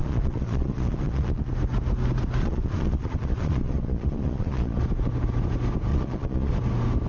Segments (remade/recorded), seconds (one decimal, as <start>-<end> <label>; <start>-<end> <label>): 0.0-1.5 remade; 1.5-2.4 recorded; 2.4-4.8 remade; 4.8-5.9 recorded; 5.9-6.5 remade; 6.5-7.1 recorded